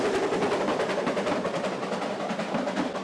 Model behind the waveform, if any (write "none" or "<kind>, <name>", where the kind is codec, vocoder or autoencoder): none